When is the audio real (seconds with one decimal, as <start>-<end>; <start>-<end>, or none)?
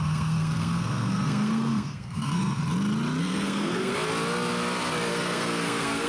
2.6-3.2; 3.9-5.1